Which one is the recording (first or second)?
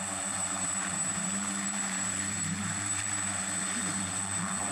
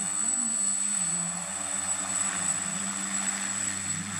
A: second